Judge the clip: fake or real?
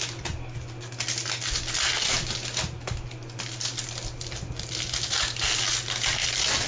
real